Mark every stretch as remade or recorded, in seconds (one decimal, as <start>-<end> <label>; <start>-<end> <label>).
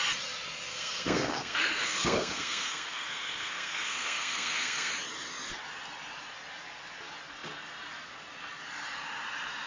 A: 0.0-0.7 recorded; 0.7-4.9 remade; 4.9-9.7 recorded